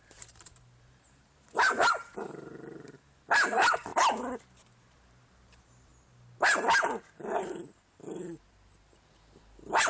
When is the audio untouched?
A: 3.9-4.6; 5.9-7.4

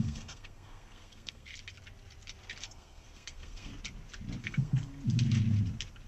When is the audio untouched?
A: 1.5-2.6; 3.7-4.4; 4.9-6.1

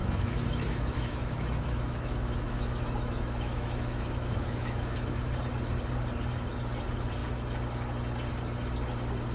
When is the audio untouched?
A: 5.3-9.3

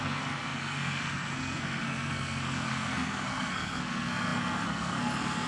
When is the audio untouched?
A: none

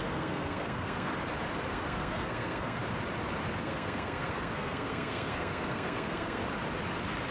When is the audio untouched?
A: 1.1-1.7; 2.8-3.6; 6.4-7.3

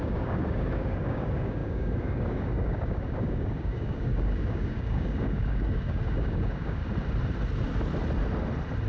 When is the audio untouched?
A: 6.8-8.9